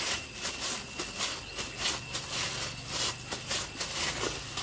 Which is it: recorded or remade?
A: recorded